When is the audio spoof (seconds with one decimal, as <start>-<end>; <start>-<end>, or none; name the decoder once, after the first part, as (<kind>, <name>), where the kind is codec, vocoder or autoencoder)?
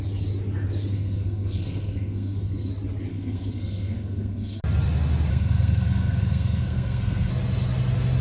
0.9-2.7 (codec, SNAC); 3.1-4.6; 5.3-7.3